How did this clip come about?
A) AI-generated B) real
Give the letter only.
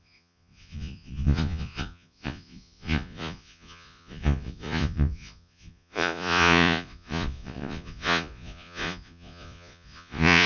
A